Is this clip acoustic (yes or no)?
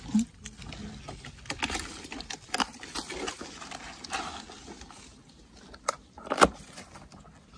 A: yes